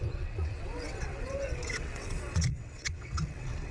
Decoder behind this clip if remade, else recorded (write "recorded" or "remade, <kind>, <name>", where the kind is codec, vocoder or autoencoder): remade, vocoder, WaveNeXt